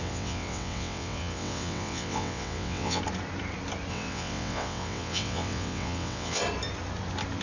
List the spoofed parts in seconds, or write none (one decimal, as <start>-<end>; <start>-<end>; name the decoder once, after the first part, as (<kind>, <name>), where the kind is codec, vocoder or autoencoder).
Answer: 0.0-3.0 (vocoder, WaveNeXt); 3.9-6.4